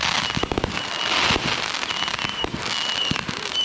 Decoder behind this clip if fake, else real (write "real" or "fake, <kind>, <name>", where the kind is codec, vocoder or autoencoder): real